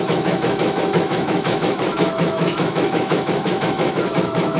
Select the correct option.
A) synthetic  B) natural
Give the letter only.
A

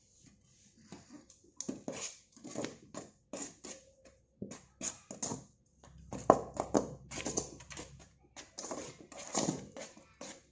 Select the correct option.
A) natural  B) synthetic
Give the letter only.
A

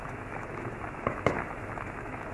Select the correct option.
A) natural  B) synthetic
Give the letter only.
B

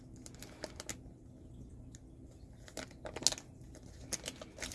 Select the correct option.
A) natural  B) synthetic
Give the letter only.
A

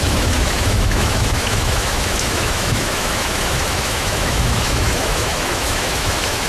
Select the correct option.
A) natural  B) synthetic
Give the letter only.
B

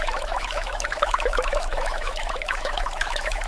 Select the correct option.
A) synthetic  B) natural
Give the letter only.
A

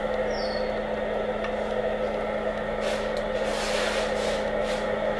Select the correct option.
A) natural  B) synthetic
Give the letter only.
A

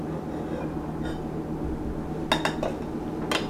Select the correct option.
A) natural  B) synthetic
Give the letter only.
A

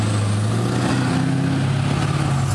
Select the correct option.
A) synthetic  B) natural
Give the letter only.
B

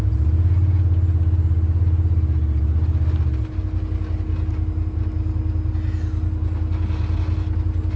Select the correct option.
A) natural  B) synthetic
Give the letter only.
A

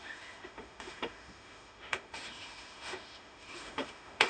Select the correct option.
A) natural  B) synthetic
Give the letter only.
B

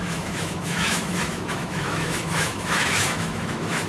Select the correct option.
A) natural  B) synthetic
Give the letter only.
B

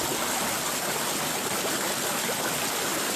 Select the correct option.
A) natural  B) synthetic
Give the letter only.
A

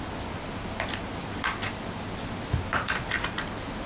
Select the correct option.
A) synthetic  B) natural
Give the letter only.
B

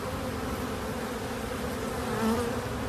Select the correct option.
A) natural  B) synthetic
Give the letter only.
A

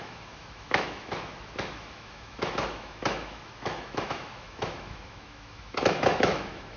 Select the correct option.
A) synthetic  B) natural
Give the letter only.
A